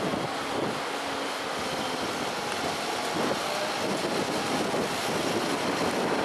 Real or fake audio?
real